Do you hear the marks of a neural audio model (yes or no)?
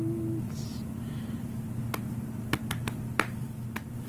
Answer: no